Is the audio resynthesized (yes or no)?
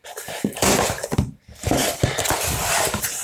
yes